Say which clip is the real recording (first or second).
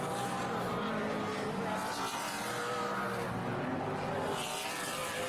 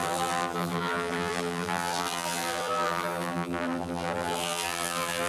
first